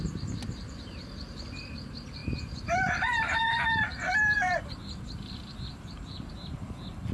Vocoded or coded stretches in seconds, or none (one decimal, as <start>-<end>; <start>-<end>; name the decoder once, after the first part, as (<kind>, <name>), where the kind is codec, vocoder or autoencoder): 0.0-7.1 (vocoder, BigVGAN v2)